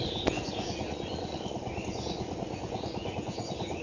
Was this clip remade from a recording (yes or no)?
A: yes